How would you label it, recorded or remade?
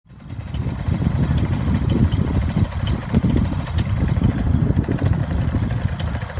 recorded